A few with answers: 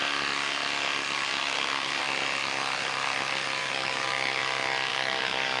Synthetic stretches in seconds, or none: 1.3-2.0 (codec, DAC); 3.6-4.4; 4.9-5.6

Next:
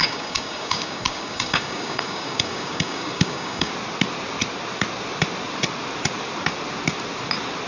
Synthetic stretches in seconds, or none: 0.0-3.7 (codec, DAC)

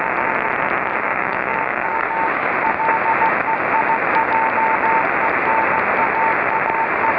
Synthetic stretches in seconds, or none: 0.9-2.5 (codec, DAC)